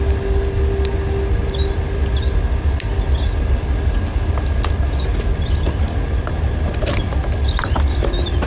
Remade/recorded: recorded